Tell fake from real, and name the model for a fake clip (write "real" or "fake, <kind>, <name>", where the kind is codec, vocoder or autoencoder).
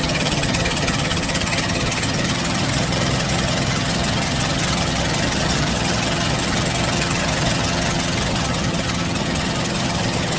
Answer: fake, vocoder, HiFi-GAN